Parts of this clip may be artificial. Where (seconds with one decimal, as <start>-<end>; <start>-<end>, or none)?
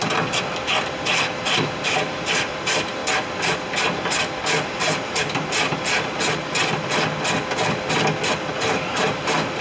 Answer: 0.0-3.0; 4.8-5.2; 8.6-9.6